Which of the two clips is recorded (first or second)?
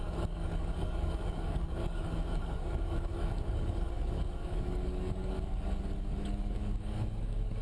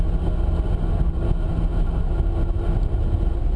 second